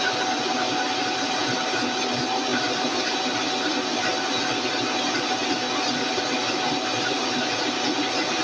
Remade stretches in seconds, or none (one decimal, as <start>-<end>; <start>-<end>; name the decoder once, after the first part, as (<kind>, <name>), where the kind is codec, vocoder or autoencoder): 2.5-3.2 (vocoder, BigVGAN v2)